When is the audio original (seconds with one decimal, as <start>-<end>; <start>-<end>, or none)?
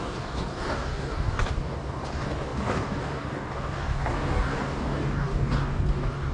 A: none